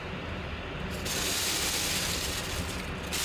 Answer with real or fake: real